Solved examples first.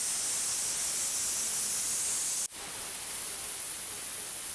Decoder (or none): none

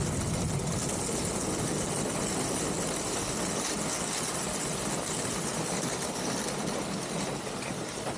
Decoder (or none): none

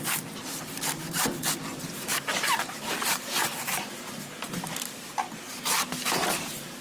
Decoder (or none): vocoder, BigVGAN v2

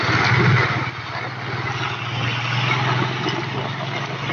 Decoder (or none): none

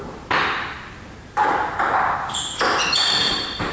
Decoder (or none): vocoder, BigVGAN v2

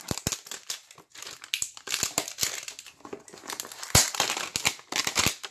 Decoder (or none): none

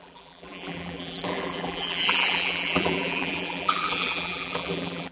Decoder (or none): vocoder, BigVGAN v2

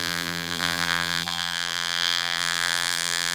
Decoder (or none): vocoder, BigVGAN v2